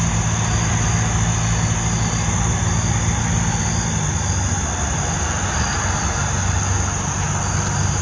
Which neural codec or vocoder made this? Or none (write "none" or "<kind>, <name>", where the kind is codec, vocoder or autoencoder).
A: none